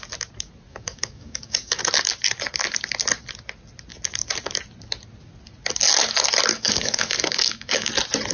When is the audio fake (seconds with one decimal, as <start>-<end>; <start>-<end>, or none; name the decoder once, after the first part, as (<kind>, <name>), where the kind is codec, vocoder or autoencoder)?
0.7-1.8 (codec, DAC); 6.5-7.9